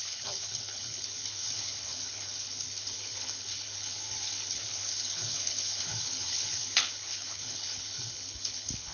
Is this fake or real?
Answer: fake